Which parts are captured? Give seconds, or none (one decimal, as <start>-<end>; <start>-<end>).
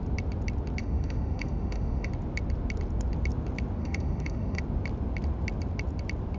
0.0-0.8; 2.1-3.8; 4.6-6.4